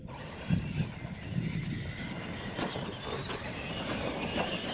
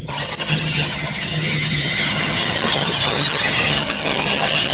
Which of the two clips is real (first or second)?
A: first